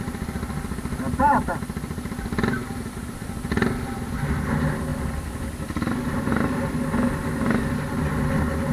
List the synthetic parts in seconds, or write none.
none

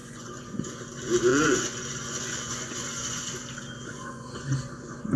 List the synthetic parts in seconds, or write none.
0.0-0.9 (vocoder, Vocos); 1.3-3.4; 3.9-5.2

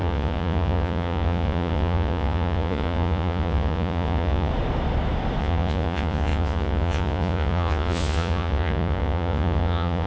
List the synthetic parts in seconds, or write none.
0.0-4.5 (vocoder, Vocos); 5.4-10.1

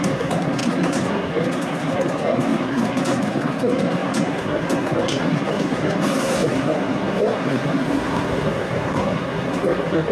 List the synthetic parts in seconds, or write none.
0.0-10.1 (codec, SNAC)

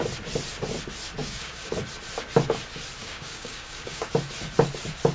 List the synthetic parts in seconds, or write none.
1.2-1.7 (codec, DAC); 3.0-4.1